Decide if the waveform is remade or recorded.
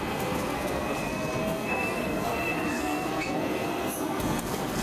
remade